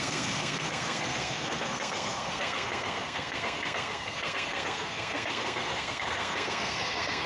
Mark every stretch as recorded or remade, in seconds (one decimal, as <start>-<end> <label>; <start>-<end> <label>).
0.0-7.3 remade